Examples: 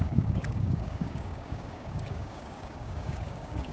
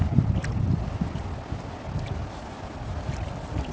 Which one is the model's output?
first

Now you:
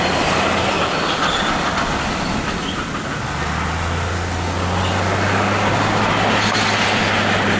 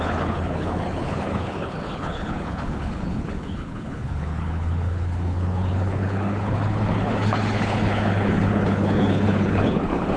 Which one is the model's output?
second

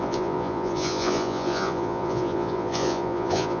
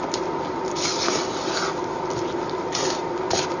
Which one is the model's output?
first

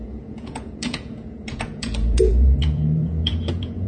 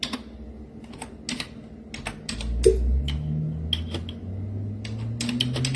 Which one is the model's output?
first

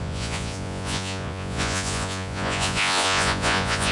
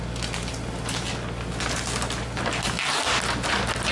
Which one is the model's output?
first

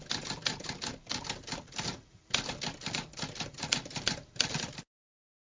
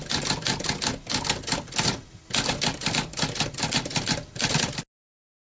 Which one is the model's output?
first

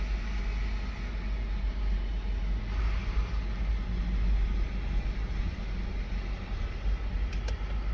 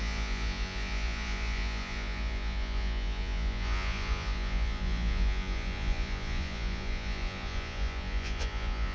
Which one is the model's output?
second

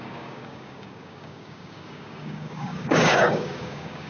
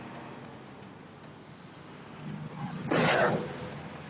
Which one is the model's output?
first